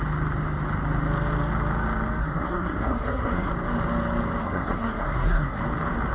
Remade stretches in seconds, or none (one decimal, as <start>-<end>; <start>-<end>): 2.2-3.5; 4.4-5.6

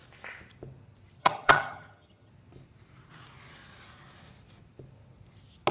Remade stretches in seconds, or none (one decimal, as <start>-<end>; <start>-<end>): 1.2-2.3

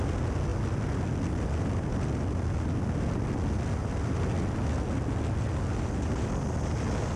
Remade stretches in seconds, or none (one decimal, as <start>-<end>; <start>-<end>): none